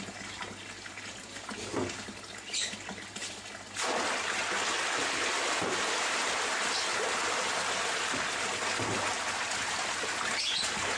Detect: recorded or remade recorded